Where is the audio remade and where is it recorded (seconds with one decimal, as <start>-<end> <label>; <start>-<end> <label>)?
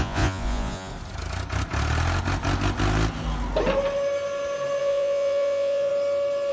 0.0-0.9 remade; 0.9-4.8 recorded; 4.8-5.9 remade; 5.9-6.5 recorded